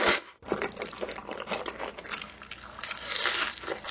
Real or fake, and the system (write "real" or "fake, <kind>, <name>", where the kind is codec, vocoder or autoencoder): real